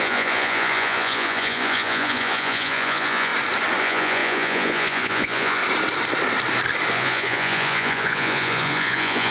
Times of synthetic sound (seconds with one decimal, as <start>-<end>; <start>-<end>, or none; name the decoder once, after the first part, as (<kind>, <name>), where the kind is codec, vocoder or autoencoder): 0.0-3.3 (vocoder, Vocos); 3.8-5.6; 6.9-9.3